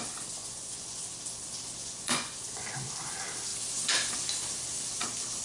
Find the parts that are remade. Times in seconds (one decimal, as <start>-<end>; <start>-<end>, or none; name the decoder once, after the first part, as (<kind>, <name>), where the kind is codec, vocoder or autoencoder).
0.4-1.0 (vocoder, Vocos); 1.8-2.7

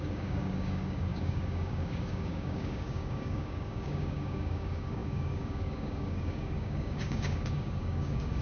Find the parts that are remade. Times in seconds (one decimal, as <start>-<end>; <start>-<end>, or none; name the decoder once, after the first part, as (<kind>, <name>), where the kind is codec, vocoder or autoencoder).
0.0-8.4 (codec, DAC)

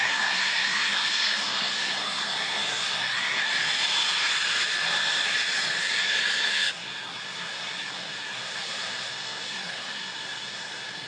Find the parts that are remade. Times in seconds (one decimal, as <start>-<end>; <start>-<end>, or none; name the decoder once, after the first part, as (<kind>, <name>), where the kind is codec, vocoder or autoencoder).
0.0-3.5 (codec, SNAC); 5.8-11.1